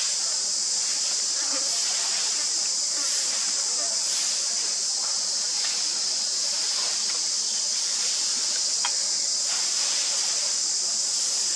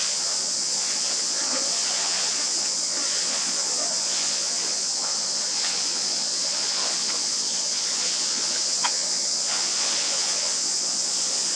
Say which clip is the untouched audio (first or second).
first